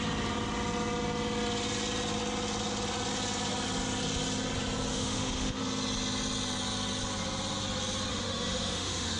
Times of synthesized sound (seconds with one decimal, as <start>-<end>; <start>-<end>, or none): 4.9-5.6; 8.1-9.2